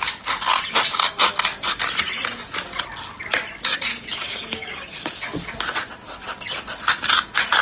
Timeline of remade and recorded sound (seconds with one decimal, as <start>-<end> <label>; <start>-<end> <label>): 0.0-3.9 recorded; 3.9-5.1 remade; 5.1-7.6 recorded